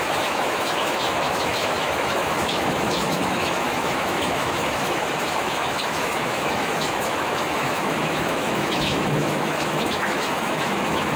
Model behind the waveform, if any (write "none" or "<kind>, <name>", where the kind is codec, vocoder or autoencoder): autoencoder, DAC-VAE